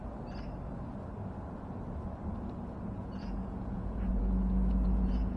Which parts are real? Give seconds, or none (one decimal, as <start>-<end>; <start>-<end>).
0.0-2.9